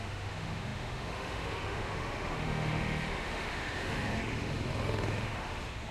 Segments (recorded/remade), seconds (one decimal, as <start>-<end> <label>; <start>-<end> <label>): 0.0-5.9 remade

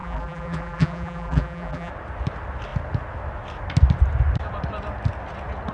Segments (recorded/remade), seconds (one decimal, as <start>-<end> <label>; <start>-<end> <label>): 0.0-1.9 remade; 1.9-5.7 recorded

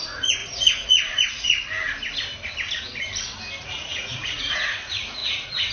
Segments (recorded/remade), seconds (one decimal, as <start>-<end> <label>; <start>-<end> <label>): 0.0-1.7 remade; 1.7-3.6 recorded; 3.6-5.7 remade